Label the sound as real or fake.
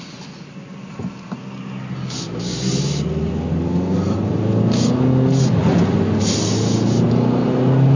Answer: real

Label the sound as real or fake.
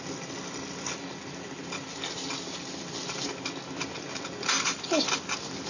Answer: real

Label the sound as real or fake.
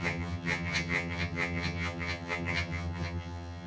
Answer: fake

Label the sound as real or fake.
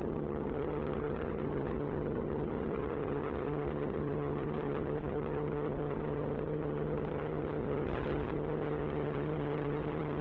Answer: fake